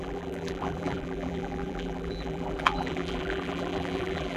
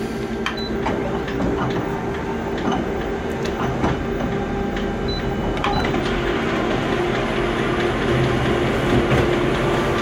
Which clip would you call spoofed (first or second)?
first